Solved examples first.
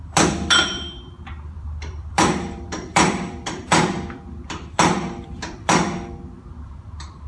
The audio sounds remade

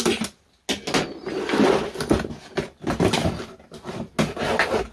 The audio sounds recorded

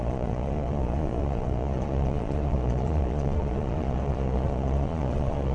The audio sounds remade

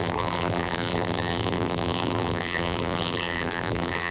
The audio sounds remade